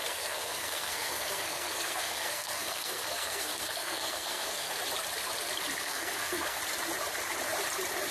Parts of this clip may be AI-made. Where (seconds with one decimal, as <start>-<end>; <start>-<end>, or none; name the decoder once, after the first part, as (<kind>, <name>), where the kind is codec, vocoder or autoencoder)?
0.0-4.7 (codec, SNAC); 5.8-6.6